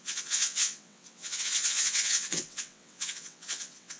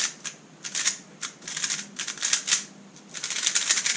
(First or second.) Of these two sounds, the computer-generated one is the first